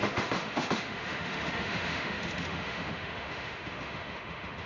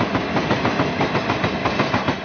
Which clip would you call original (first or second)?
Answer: second